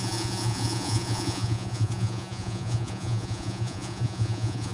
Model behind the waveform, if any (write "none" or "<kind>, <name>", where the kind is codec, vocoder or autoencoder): vocoder, Vocos